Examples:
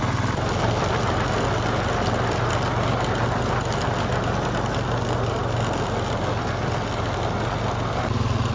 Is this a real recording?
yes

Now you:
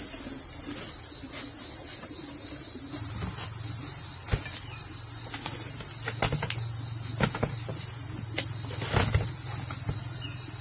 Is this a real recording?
yes